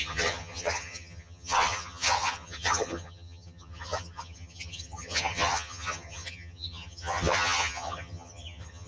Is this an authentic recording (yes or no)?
no